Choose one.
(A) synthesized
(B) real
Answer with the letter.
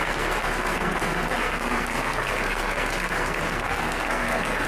A